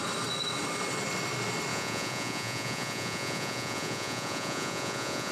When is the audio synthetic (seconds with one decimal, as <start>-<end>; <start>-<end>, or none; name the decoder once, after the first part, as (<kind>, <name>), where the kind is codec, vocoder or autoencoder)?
1.7-5.3 (vocoder, Vocos)